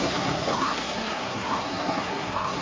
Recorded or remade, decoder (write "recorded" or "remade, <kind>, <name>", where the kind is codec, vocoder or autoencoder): remade, codec, SNAC